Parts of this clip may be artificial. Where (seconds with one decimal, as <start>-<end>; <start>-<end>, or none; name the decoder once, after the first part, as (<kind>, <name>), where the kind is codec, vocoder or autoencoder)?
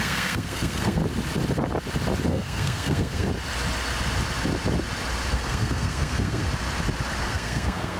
0.0-1.0 (codec, SNAC); 2.3-3.3; 5.3-6.4; 7.2-8.0